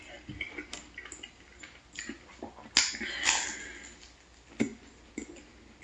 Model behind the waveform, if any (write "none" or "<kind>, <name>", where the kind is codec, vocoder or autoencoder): none